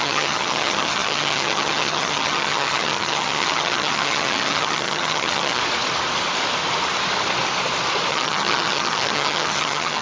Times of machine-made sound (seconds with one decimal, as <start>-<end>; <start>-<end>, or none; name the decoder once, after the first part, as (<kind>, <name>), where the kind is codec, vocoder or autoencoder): 0.0-5.6 (vocoder, HiFi-GAN); 8.1-10.0